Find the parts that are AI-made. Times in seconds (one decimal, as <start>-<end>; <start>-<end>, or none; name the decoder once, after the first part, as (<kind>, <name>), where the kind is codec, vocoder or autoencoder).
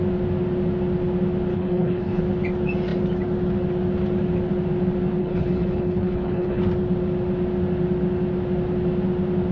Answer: 1.5-2.2 (codec, HILCodec); 5.2-6.6